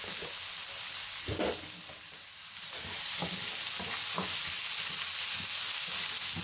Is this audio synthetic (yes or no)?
no